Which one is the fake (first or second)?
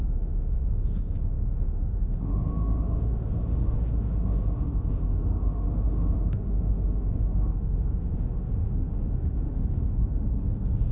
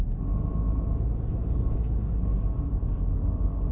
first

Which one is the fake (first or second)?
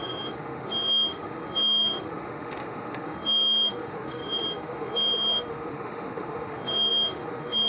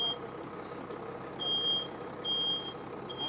first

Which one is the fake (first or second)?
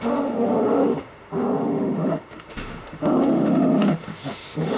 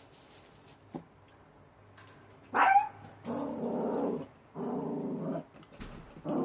first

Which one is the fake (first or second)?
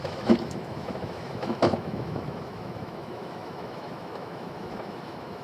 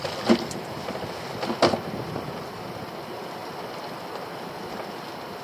first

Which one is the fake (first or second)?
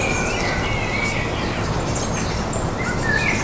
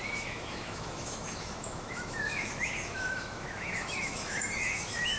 second